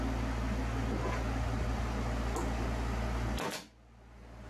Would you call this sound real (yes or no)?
yes